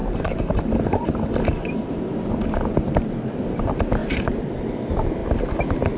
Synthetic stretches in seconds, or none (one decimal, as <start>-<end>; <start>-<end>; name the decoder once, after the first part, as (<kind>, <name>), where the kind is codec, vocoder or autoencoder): 0.0-3.6 (vocoder, BigVGAN v2); 4.0-4.6